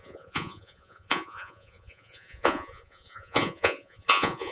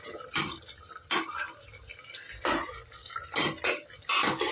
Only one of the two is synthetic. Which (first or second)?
first